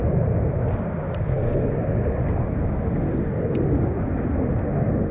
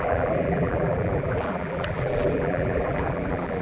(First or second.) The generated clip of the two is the second